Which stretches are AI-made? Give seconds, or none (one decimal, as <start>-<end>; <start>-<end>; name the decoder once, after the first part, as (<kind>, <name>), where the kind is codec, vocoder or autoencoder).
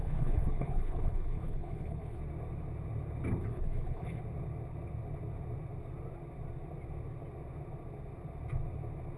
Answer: 0.0-2.2 (codec, HILCodec); 3.4-4.2